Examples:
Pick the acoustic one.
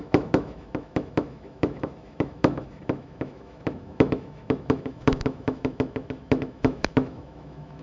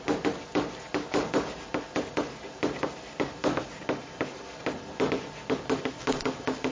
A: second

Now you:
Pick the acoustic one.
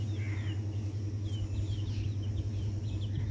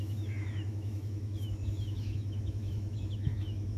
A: first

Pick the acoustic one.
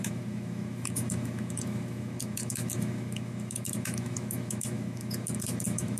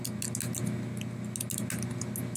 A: second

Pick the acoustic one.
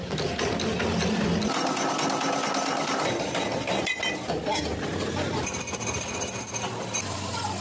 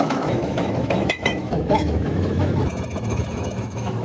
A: first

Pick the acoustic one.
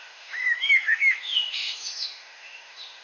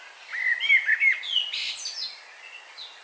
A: second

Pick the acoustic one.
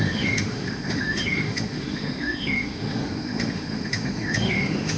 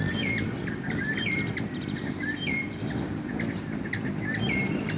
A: second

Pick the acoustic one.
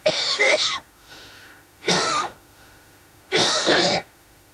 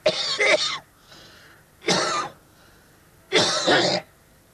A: second